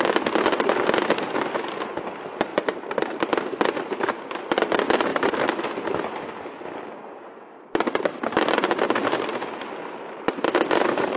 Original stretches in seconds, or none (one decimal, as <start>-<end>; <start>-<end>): 0.0-2.5; 3.2-5.1; 5.6-9.0